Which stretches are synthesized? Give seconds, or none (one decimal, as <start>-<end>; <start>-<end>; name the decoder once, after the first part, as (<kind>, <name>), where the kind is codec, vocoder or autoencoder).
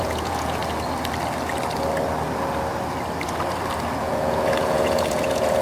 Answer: 0.0-0.6 (vocoder, Vocos); 4.0-5.6